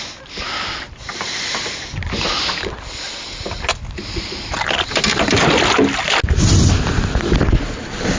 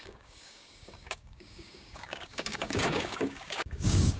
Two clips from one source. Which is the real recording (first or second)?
first